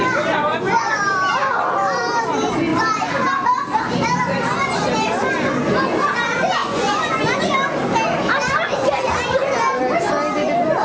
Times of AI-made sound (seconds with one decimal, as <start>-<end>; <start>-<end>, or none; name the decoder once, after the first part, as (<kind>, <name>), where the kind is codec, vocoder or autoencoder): 0.5-1.0 (vocoder, Vocos); 6.6-7.4